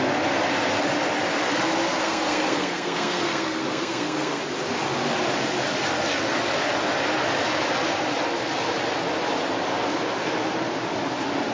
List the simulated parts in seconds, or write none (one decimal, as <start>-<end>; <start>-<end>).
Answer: 2.0-4.4